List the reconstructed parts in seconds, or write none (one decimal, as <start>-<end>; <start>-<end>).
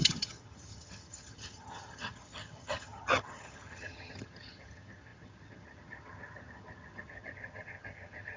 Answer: 0.0-8.4